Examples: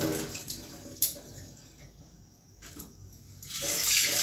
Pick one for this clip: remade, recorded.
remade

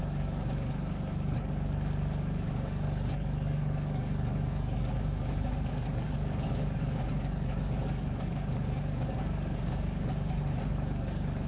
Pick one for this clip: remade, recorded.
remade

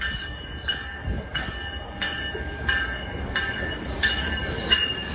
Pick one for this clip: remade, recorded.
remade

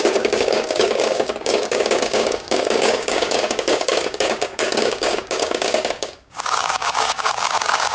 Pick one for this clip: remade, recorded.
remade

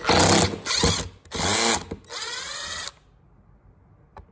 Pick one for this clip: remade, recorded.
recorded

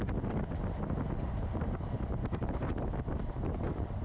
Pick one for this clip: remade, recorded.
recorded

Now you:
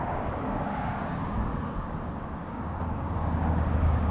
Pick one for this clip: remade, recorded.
remade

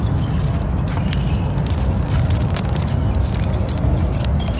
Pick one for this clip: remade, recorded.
recorded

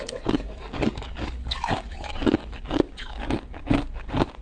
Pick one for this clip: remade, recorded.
remade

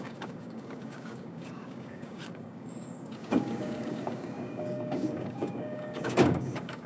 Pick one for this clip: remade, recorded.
remade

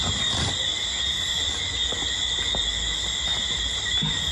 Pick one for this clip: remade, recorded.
recorded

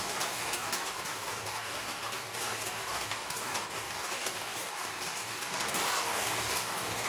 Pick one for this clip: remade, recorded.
remade